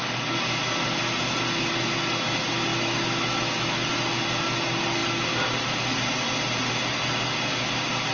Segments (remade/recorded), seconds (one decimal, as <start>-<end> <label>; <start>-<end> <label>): 0.0-2.7 recorded; 2.7-3.9 remade; 3.9-8.1 recorded